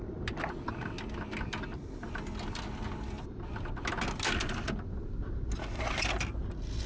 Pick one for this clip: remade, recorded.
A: recorded